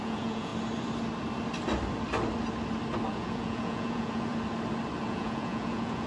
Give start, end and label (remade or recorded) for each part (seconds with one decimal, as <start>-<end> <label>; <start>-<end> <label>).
0.0-0.5 remade; 0.5-3.1 recorded; 3.1-4.3 remade; 4.3-5.0 recorded; 5.0-6.1 remade